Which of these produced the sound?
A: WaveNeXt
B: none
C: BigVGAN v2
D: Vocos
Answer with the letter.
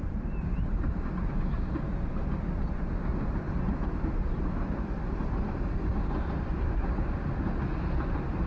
B